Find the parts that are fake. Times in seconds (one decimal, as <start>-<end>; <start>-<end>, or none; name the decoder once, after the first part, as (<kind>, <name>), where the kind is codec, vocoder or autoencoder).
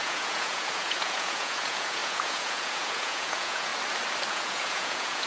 0.0-3.7 (vocoder, Vocos); 4.3-5.3